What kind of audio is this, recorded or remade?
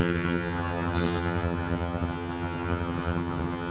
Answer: remade